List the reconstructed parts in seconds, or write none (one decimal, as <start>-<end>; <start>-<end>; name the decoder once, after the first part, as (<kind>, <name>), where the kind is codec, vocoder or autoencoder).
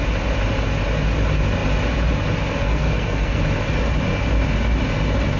2.6-3.4 (codec, SNAC)